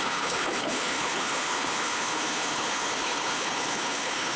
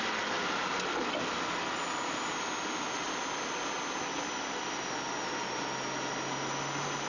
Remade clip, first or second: first